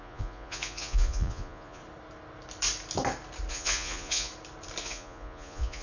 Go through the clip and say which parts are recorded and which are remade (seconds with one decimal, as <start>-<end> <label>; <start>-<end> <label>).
0.0-1.8 remade; 1.8-3.5 recorded; 3.5-4.3 remade; 4.3-4.8 recorded; 4.8-5.8 remade